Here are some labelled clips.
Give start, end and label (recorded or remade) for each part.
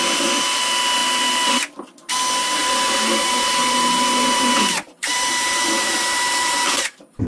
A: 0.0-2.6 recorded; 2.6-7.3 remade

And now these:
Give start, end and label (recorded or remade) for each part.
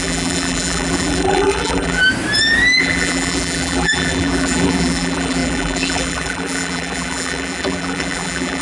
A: 0.0-2.0 remade; 2.0-2.8 recorded; 2.8-8.6 remade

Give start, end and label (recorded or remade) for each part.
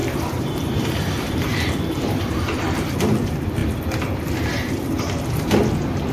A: 0.0-2.6 remade; 2.6-6.1 recorded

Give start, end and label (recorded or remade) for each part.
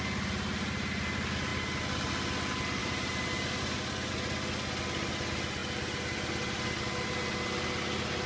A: 0.0-2.8 recorded; 2.8-4.1 remade; 4.1-8.3 recorded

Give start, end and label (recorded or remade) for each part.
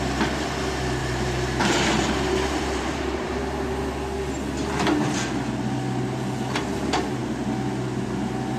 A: 0.0-1.0 recorded; 1.0-3.4 remade; 3.4-8.6 recorded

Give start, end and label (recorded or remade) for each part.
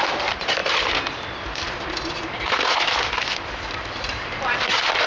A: 0.0-0.6 remade; 0.6-3.7 recorded; 3.7-5.1 remade